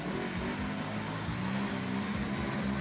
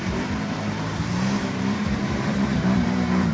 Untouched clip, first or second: first